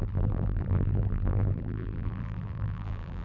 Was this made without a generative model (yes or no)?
no